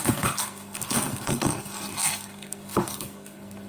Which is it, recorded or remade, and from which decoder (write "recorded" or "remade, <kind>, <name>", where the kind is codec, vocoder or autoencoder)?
remade, codec, SNAC